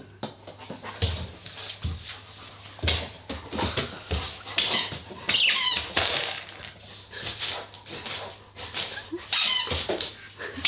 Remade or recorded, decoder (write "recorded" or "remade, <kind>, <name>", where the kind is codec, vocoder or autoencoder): recorded